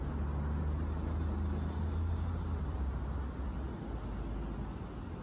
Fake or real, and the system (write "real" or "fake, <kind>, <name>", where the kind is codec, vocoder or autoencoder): real